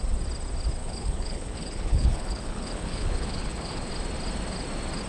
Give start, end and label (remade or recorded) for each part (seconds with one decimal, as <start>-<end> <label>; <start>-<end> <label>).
0.0-0.8 recorded; 0.8-3.9 remade; 3.9-5.1 recorded